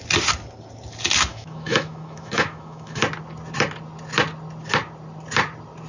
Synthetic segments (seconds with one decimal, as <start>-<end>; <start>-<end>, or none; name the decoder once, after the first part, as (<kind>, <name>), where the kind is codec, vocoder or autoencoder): 1.3-3.0 (autoencoder, DAC-VAE)